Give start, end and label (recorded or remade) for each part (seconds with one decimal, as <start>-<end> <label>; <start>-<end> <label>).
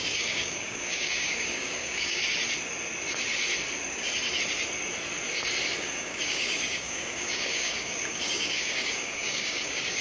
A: 0.0-2.2 remade; 2.2-5.8 recorded; 5.8-10.0 remade